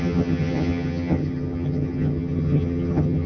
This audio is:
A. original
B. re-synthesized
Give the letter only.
B